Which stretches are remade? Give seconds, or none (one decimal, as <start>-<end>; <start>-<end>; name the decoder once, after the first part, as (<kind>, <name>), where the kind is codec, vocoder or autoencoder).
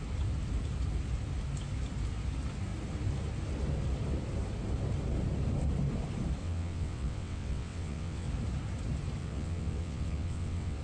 6.4-8.3 (vocoder, WaveNeXt); 9.2-10.8